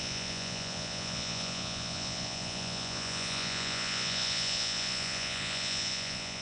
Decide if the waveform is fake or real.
fake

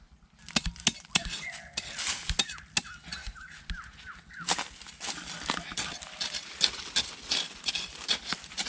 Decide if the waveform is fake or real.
real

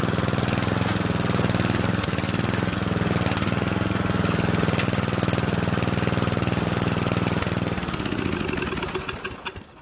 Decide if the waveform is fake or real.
real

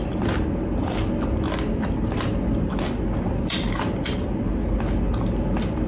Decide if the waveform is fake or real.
real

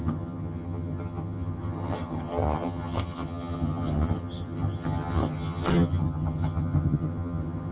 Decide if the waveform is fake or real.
fake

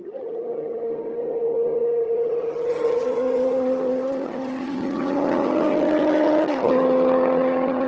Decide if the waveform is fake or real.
fake